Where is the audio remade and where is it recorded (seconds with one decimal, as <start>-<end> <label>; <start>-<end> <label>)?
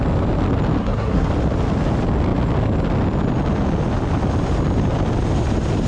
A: 0.0-0.8 recorded; 0.8-1.3 remade; 1.3-5.9 recorded